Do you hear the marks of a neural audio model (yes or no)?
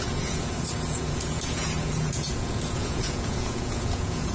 yes